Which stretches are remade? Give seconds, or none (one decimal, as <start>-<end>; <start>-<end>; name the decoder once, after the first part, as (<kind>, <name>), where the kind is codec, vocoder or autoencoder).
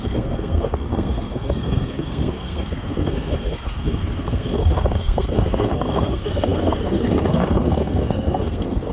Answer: 0.0-8.9 (codec, SNAC)